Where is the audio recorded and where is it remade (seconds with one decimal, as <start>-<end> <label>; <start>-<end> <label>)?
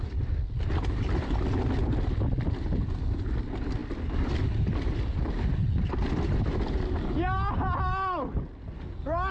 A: 0.0-9.3 recorded